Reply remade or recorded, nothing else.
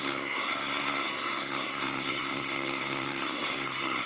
remade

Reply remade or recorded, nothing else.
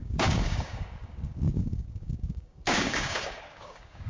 remade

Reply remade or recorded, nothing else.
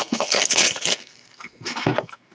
remade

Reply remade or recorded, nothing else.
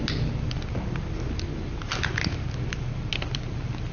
recorded